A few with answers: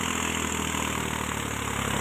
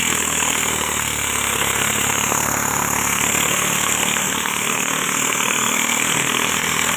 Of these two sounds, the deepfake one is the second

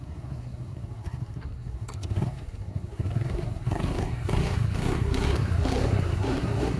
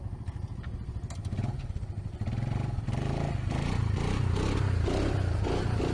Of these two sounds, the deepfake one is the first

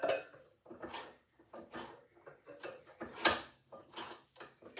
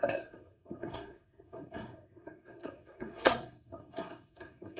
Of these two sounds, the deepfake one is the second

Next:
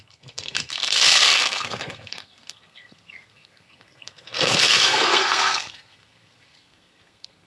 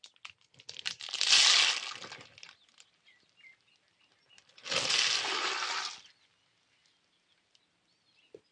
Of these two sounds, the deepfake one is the first